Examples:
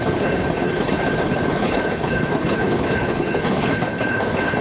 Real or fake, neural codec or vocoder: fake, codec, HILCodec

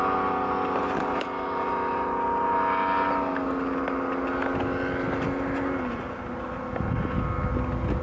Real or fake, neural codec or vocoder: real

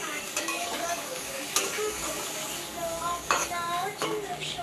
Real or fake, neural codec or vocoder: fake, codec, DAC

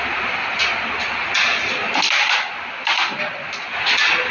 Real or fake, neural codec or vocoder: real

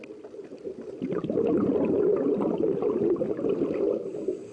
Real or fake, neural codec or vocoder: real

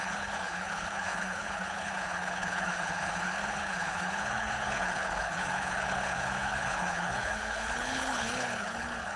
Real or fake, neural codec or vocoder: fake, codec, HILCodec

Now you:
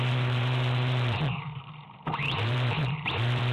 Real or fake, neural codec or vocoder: fake, vocoder, BigVGAN v2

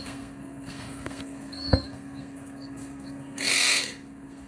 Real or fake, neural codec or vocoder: fake, codec, SNAC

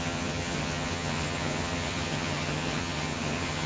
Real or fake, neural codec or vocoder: fake, vocoder, HiFi-GAN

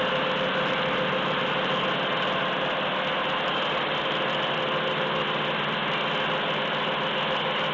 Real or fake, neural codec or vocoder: real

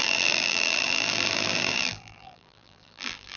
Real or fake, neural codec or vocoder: fake, vocoder, BigVGAN v2